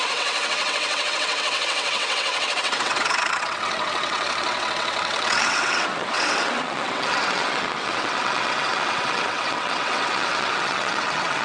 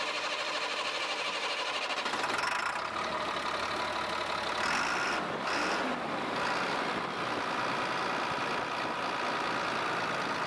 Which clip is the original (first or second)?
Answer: second